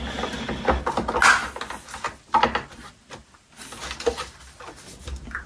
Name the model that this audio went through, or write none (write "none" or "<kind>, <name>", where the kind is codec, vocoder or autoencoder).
none